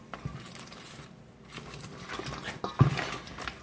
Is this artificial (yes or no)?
no